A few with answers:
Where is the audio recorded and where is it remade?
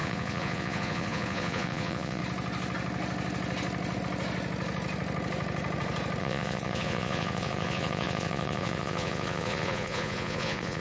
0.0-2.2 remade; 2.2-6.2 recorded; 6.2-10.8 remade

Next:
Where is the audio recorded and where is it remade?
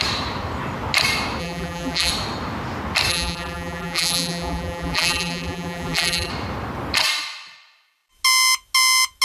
0.0-1.4 recorded; 1.4-2.1 remade; 2.1-3.1 recorded; 3.1-6.3 remade; 6.3-9.2 recorded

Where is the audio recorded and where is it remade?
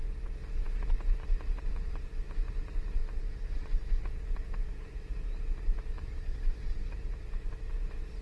0.0-3.0 recorded; 3.0-7.7 remade; 7.7-8.2 recorded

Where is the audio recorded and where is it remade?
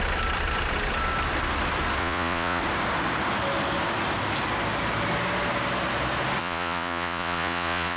0.0-2.0 recorded; 2.0-2.6 remade; 2.6-6.4 recorded; 6.4-8.0 remade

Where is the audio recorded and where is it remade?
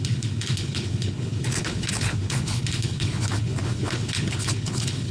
0.0-5.1 remade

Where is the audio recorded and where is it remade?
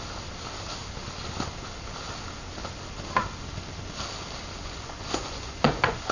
0.0-4.6 recorded; 4.6-6.1 remade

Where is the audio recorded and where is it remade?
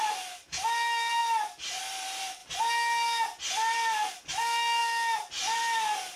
0.0-6.2 recorded